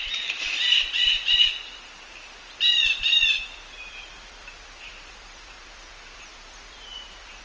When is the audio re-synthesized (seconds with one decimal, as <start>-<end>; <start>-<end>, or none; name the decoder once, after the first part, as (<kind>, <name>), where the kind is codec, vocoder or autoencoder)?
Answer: 0.0-3.4 (vocoder, BigVGAN v2)